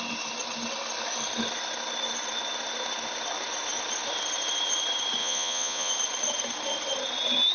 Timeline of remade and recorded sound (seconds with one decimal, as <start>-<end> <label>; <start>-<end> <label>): 0.0-5.2 recorded; 5.2-5.9 remade; 5.9-7.5 recorded